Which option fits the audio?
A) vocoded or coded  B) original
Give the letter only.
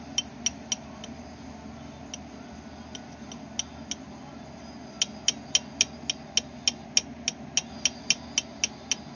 B